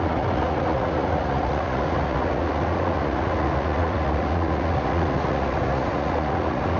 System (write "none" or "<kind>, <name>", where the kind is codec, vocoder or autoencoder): vocoder, Vocos